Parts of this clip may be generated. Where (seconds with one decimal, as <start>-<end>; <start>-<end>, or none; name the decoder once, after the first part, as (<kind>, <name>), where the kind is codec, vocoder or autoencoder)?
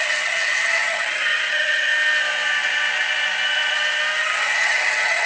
0.0-1.9 (vocoder, HiFi-GAN); 4.2-5.3